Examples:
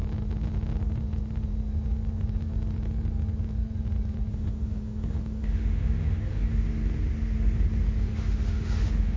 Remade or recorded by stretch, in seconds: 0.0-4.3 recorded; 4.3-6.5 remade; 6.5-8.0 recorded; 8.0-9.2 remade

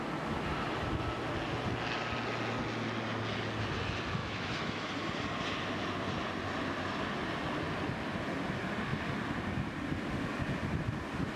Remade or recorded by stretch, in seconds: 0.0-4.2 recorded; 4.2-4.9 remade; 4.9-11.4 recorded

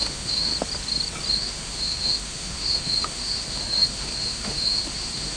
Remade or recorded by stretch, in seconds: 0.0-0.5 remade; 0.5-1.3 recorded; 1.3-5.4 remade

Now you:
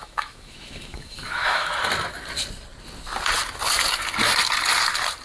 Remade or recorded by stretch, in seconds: 0.0-1.7 remade; 1.7-5.2 recorded

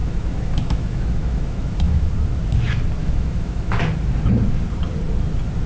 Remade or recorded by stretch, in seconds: 0.0-2.1 remade; 2.1-3.0 recorded; 3.0-3.8 remade; 3.8-5.7 recorded

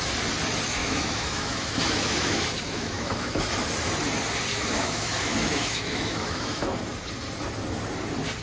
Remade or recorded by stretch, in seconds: 0.0-0.8 recorded; 0.8-3.4 remade; 3.4-4.5 recorded; 4.5-6.8 remade; 6.8-8.4 recorded

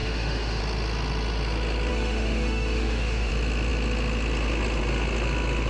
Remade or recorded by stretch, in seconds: 0.0-0.6 remade; 0.6-1.9 recorded; 1.9-3.3 remade; 3.3-5.7 recorded

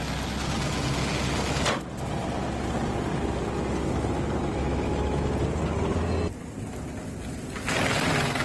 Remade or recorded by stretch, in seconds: 0.0-4.5 recorded; 4.5-5.3 remade; 5.3-8.4 recorded